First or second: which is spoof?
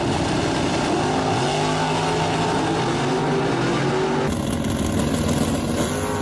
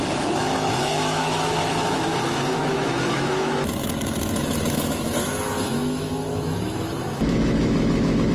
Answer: second